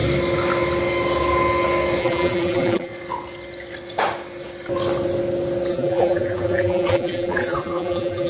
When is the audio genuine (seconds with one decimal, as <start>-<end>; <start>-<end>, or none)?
0.0-2.0; 2.9-5.7